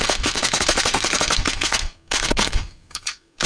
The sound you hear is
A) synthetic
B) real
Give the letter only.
A